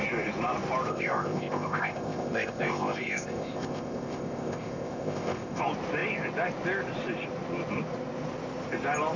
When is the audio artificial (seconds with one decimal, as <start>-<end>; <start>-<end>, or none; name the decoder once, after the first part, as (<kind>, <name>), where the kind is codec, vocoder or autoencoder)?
0.9-5.6 (codec, ZipCodec)